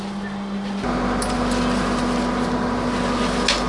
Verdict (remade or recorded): recorded